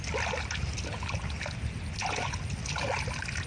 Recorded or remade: recorded